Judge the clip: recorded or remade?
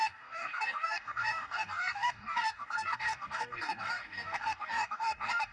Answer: remade